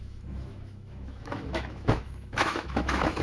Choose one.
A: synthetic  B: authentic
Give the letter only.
A